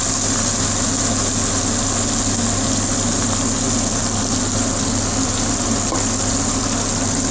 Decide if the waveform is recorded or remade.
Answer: recorded